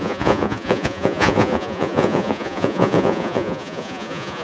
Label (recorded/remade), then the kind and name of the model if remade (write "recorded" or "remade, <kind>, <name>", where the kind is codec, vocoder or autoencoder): remade, vocoder, Vocos